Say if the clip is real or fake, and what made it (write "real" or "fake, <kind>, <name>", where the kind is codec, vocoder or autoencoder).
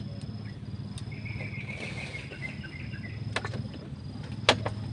real